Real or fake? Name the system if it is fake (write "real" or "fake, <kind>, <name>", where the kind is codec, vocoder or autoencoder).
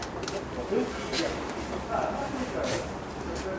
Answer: real